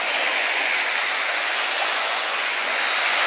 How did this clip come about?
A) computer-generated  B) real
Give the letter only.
A